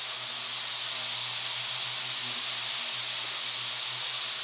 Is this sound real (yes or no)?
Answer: yes